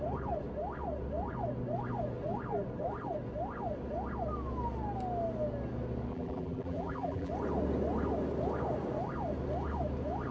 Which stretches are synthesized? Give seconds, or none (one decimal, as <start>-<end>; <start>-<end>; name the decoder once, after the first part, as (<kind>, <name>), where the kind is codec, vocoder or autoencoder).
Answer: 6.1-7.3 (vocoder, BigVGAN v2)